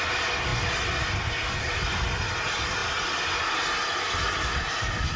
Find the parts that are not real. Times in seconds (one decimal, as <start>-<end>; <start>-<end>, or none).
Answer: none